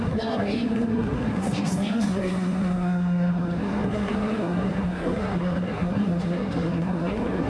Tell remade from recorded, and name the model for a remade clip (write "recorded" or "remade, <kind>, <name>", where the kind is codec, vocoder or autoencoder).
remade, codec, SNAC